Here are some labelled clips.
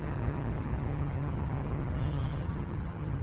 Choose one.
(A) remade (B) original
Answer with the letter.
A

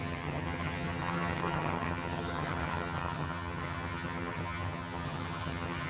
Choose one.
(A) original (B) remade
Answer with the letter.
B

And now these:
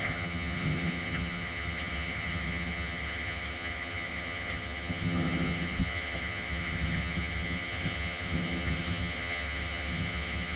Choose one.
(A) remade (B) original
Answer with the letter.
A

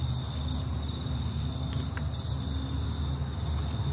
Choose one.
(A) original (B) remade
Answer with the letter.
A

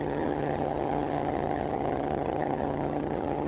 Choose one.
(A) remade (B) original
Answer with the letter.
A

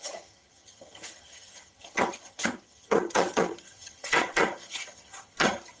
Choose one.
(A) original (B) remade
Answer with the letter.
B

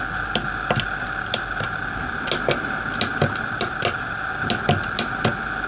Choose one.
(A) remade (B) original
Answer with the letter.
B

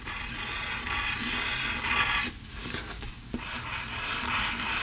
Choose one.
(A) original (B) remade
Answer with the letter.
A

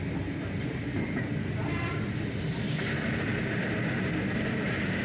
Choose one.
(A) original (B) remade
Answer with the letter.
A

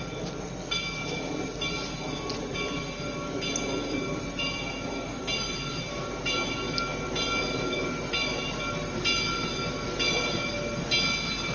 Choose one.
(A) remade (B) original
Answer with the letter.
B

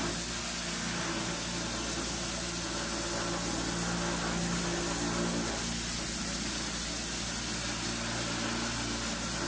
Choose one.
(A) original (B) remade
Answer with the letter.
A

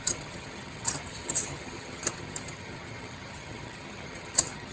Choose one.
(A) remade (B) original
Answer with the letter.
A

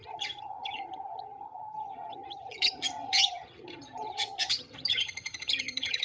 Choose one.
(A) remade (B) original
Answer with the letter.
A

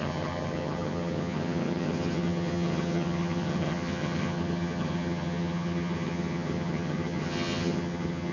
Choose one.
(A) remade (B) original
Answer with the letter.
A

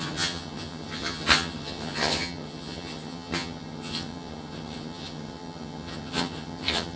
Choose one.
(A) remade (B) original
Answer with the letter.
A